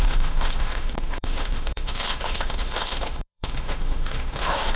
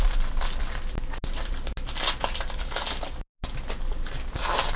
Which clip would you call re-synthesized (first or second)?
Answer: first